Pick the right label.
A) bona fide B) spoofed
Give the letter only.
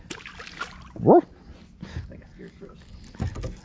A